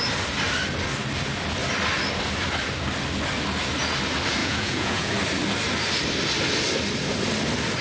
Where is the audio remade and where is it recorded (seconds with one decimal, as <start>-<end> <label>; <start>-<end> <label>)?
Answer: 0.0-4.4 recorded; 4.4-5.1 remade; 5.1-7.8 recorded

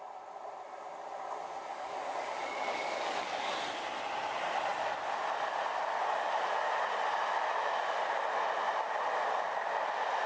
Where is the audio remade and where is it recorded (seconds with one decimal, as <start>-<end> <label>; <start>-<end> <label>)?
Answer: 0.0-1.7 recorded; 1.7-3.6 remade; 3.6-10.3 recorded

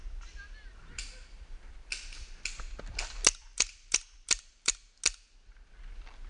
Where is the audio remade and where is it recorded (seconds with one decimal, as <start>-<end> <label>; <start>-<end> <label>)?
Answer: 0.0-0.7 recorded; 0.7-1.7 remade; 1.7-3.4 recorded; 3.4-4.7 remade; 4.7-6.3 recorded

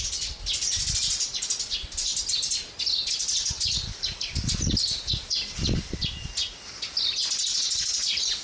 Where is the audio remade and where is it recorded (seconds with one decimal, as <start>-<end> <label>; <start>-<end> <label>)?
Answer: 0.0-8.4 recorded

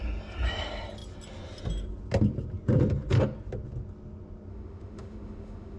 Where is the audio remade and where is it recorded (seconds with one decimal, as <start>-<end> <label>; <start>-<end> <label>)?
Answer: 0.0-4.5 recorded; 4.5-5.8 remade

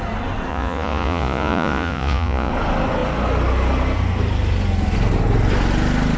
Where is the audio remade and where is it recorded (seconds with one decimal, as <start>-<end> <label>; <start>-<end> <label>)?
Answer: 0.0-0.5 recorded; 0.5-2.5 remade; 2.5-6.2 recorded

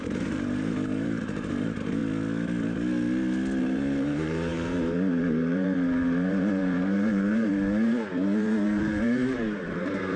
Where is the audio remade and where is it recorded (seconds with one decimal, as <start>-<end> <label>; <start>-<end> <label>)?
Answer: 0.0-2.0 remade; 2.0-3.6 recorded; 3.6-10.2 remade